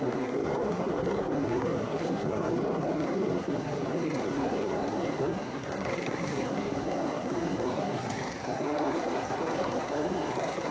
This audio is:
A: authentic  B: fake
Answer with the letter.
B